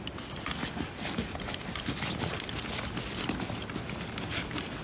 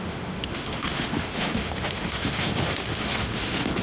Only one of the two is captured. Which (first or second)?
first